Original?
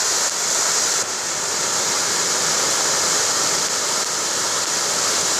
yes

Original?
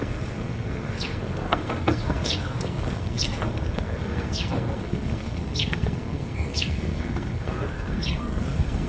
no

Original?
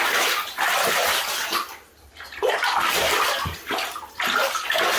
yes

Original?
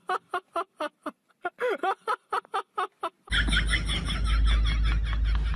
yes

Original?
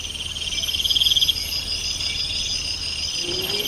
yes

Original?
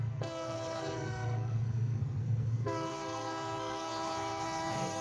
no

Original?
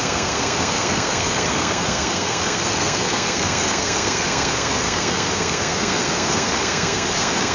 no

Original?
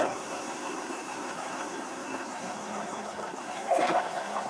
no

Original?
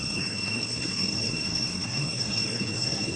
no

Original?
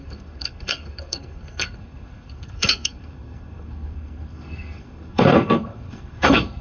no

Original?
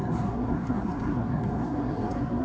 no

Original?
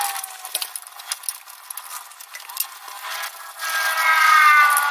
yes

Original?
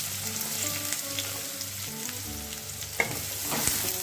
yes